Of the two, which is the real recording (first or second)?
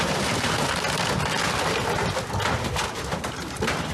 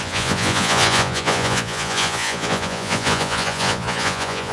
first